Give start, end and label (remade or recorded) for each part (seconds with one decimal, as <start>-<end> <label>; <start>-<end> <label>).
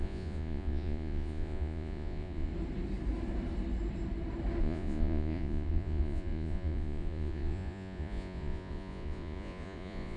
0.0-2.5 remade; 2.5-4.6 recorded; 4.6-10.2 remade